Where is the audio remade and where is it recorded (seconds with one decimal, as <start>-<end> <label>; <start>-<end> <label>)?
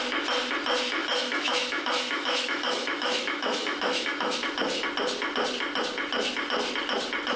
0.0-1.0 recorded; 1.0-4.4 remade; 4.4-7.4 recorded